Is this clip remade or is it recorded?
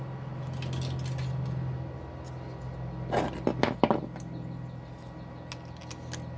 recorded